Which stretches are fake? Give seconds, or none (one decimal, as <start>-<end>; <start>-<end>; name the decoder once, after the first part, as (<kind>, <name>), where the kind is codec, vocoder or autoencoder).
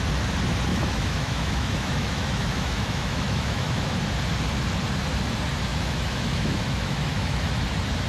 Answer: 0.7-4.0 (autoencoder, DAC-VAE); 5.7-7.5